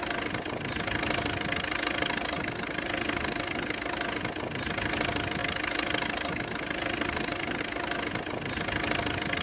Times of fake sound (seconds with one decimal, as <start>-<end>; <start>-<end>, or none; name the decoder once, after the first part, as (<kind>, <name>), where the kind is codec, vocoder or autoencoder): none

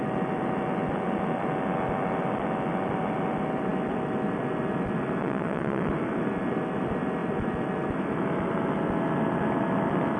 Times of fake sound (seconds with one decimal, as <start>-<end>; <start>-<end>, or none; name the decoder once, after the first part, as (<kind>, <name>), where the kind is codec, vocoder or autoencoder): 5.2-5.9 (vocoder, WaveNeXt)

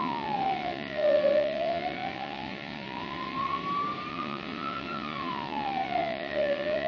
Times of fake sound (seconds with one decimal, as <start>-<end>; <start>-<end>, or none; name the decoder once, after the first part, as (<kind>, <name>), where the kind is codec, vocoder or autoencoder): 0.0-3.6 (vocoder, WaveNeXt); 4.1-6.9

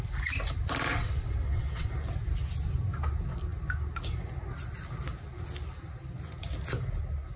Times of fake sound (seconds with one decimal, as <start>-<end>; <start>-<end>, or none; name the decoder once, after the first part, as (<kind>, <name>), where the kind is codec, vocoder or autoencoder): 0.9-1.9 (vocoder, WaveNeXt)